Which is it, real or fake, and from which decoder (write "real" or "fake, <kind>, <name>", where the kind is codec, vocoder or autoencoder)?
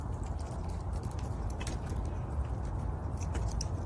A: real